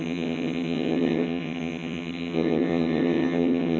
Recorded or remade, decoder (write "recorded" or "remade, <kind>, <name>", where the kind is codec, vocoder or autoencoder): remade, vocoder, HiFi-GAN